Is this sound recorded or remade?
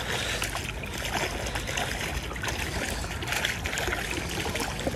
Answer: recorded